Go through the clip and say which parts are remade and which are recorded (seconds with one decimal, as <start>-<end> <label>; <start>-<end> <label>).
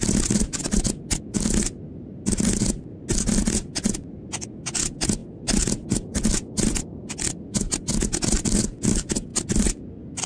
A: 0.0-10.3 recorded